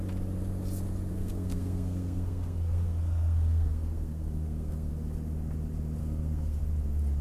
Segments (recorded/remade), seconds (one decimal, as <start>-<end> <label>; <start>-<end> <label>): 0.0-1.1 recorded; 1.1-4.9 remade; 4.9-6.0 recorded; 6.0-6.6 remade; 6.6-7.2 recorded